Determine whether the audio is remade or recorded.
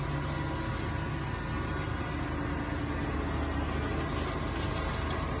recorded